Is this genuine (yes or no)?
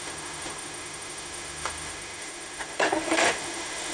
no